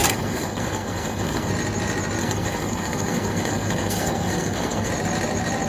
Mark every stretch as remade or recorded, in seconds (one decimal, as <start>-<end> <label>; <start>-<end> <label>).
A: 0.0-1.5 remade; 1.5-2.2 recorded; 2.2-4.9 remade; 4.9-5.7 recorded

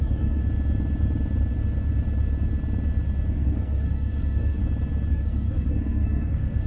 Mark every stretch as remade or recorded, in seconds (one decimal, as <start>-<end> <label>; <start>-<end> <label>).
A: 0.0-0.4 remade; 0.4-3.3 recorded; 3.3-4.6 remade; 4.6-5.1 recorded; 5.1-6.7 remade

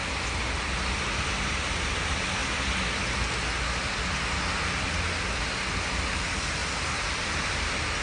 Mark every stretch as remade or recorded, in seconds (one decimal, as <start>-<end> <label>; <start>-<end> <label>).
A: 0.0-8.0 recorded

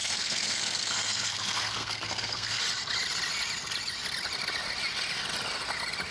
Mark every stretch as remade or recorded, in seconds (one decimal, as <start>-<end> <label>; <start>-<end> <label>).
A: 0.0-2.6 remade; 2.6-6.1 recorded

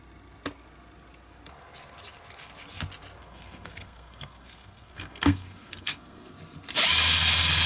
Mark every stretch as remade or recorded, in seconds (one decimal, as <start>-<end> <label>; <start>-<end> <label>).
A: 0.0-3.2 recorded; 3.2-6.3 remade; 6.3-7.7 recorded

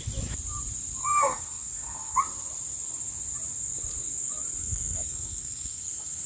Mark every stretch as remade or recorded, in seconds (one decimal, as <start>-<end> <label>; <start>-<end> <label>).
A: 0.0-1.0 recorded; 1.0-2.2 remade; 2.2-4.6 recorded; 4.6-6.3 remade

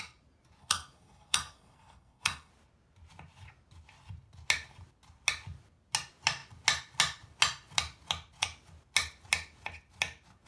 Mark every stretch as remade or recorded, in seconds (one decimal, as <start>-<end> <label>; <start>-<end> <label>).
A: 0.0-0.6 recorded; 0.6-2.5 remade; 2.5-10.5 recorded